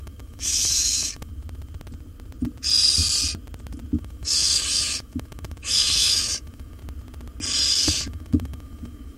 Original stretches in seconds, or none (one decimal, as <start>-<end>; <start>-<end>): 1.3-4.0; 6.8-7.7